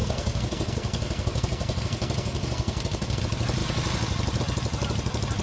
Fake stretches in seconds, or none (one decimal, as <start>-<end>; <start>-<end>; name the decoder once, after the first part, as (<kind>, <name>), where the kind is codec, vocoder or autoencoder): 0.0-3.2 (codec, SNAC)